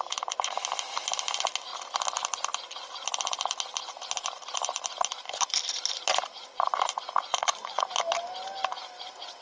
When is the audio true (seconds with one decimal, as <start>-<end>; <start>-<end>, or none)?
0.0-7.3; 7.8-9.4